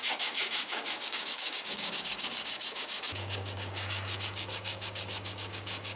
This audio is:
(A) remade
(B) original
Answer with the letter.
A